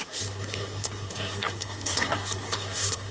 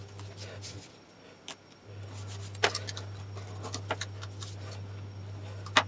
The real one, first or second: second